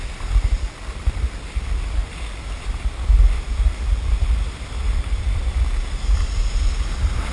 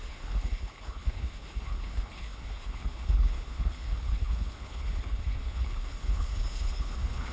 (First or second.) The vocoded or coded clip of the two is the second